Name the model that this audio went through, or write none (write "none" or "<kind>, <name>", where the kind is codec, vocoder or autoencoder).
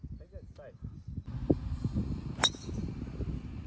none